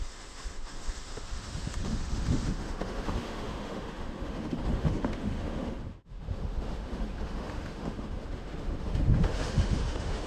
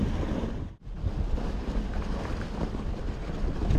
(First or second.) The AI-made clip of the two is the first